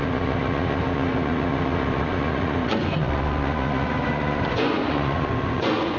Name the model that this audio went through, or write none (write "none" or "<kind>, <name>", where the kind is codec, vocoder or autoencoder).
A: vocoder, Vocos